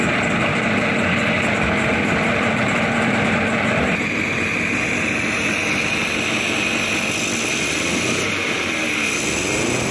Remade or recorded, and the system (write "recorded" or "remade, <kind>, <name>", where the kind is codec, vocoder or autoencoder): recorded